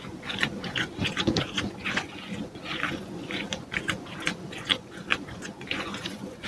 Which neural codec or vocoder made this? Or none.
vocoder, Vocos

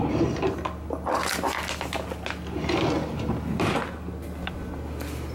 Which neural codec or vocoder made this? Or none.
none